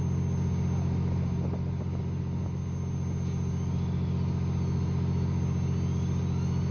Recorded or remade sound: recorded